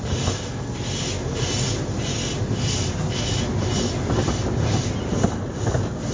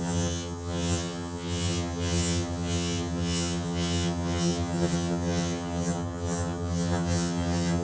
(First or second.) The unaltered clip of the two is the first